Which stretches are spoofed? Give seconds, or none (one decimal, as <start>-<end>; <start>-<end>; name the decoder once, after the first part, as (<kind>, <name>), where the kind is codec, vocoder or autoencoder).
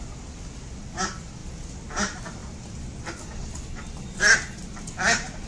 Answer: none